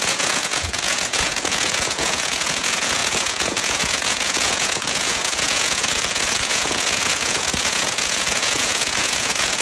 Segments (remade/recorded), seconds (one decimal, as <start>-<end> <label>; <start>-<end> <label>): 0.0-9.6 remade